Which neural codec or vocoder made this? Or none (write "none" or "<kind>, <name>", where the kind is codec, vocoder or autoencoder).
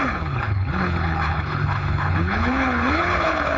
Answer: codec, HILCodec